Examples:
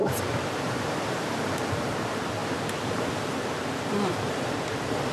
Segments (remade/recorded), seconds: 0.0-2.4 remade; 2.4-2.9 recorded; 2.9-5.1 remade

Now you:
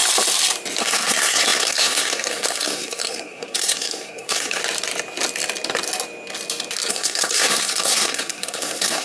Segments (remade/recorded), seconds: 0.0-0.8 recorded; 0.8-4.6 remade; 4.6-6.9 recorded; 6.9-9.0 remade

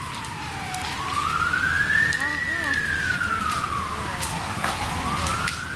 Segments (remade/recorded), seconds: 0.0-4.3 recorded; 4.3-4.9 remade; 4.9-5.8 recorded

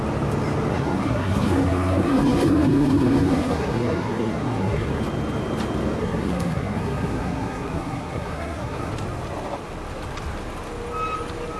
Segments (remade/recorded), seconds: 0.0-0.7 recorded; 0.7-5.0 remade; 5.0-6.0 recorded; 6.0-8.9 remade; 8.9-11.6 recorded

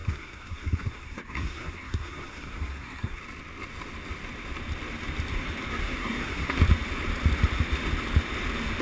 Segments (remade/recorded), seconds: 0.0-3.2 remade; 3.2-5.8 recorded; 5.8-6.6 remade; 6.6-8.8 recorded

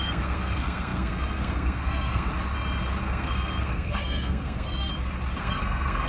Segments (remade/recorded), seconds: 0.0-2.3 remade; 2.3-3.0 recorded; 3.0-4.9 remade; 4.9-5.4 recorded; 5.4-6.1 remade

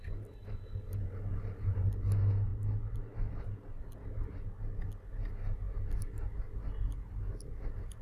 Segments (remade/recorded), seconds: 0.0-8.0 recorded

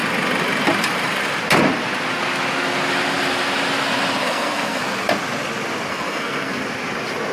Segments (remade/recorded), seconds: 0.0-4.2 recorded; 4.2-4.8 remade; 4.8-5.9 recorded; 5.9-6.5 remade; 6.5-7.3 recorded